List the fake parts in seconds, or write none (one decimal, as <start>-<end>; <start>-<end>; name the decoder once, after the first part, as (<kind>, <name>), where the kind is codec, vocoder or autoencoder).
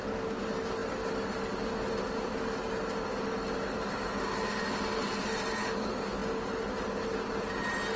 none